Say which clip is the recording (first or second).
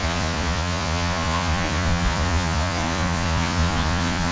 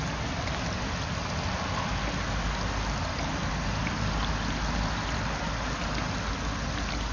second